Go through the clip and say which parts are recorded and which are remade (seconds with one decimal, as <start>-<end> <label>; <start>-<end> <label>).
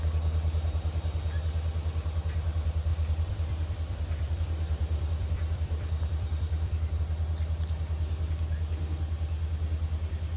0.0-2.9 recorded; 2.9-7.0 remade; 7.0-10.4 recorded